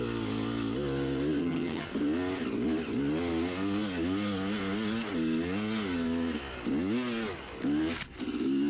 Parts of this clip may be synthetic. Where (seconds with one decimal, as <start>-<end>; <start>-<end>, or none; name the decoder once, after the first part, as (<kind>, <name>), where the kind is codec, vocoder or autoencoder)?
1.4-1.9 (vocoder, HiFi-GAN)